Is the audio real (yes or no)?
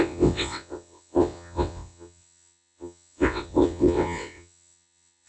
no